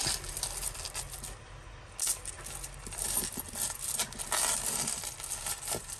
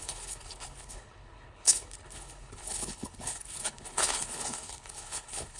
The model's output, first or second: second